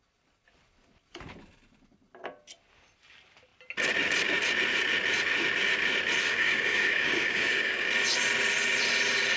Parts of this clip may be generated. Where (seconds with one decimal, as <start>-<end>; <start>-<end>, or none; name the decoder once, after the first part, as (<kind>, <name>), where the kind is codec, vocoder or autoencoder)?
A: 6.2-7.9 (codec, DAC)

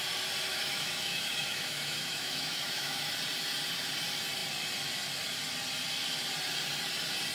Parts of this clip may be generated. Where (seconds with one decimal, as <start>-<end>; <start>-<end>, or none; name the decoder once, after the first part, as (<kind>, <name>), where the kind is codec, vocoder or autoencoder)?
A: 0.5-3.1 (autoencoder, DAC-VAE)